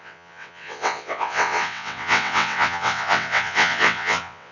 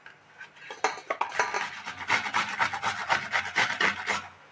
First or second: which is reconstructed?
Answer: first